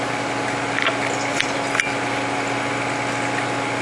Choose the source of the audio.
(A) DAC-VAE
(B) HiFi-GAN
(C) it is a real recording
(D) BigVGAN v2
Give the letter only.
C